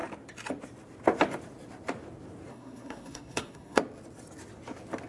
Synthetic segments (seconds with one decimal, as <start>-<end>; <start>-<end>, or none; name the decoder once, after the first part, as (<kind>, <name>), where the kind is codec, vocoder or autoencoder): 2.5-3.8 (codec, SNAC)